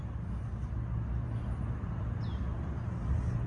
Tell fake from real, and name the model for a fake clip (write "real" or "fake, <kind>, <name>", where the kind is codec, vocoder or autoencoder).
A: real